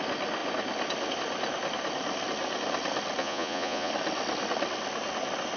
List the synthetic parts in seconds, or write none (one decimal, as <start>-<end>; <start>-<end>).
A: 3.2-3.9